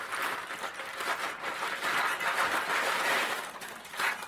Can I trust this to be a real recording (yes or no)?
no